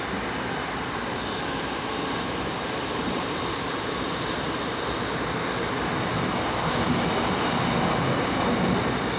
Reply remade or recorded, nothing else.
recorded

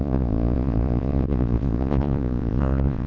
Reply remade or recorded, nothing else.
remade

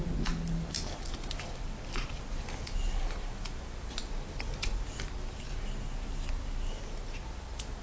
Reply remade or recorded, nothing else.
recorded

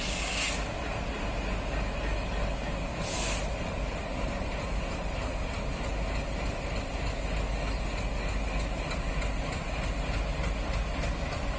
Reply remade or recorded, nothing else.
recorded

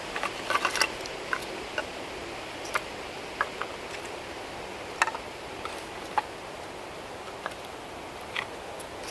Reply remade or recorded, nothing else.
recorded